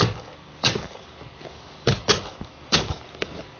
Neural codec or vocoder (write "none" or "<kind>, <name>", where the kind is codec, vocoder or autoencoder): codec, DAC